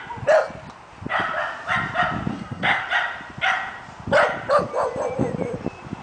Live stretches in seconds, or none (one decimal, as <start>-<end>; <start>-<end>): 0.0-2.3; 2.8-6.0